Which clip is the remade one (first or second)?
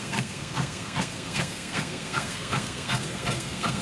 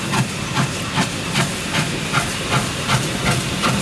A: first